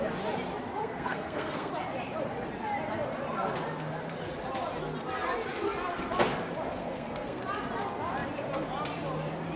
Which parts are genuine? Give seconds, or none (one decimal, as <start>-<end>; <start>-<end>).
0.0-0.8; 1.7-6.8; 7.4-9.6